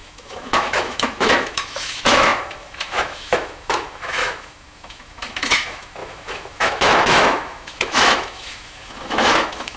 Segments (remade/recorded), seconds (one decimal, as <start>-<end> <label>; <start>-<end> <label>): 0.0-9.8 remade